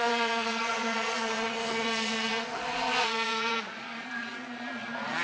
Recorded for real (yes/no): no